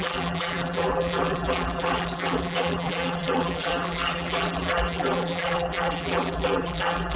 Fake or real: fake